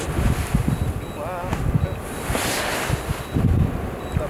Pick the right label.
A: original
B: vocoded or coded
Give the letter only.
A